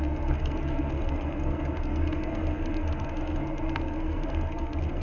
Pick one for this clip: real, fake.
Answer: fake